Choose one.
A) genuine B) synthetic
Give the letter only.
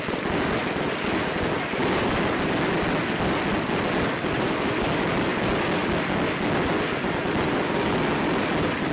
A